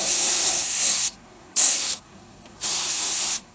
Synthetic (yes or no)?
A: yes